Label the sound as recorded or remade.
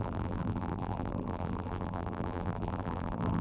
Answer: remade